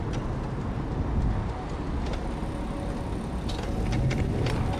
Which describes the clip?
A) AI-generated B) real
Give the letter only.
B